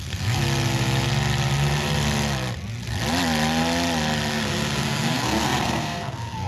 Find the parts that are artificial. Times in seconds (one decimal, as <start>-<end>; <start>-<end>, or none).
0.0-0.4; 4.3-6.5